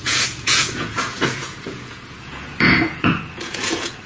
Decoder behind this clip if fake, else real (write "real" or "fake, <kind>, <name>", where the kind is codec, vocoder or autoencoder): fake, vocoder, Vocos